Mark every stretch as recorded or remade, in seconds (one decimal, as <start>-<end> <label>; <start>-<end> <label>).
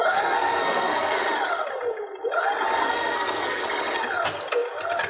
0.0-1.2 remade; 1.2-2.8 recorded; 2.8-3.6 remade; 3.6-5.1 recorded